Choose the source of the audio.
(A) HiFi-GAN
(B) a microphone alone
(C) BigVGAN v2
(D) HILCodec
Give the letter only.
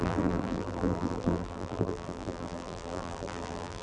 C